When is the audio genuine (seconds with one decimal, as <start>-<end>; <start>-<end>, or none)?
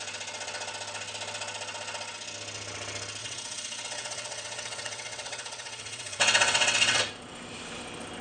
0.0-3.2; 7.0-8.2